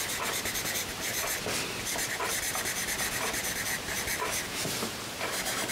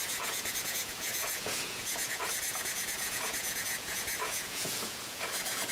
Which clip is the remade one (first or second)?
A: second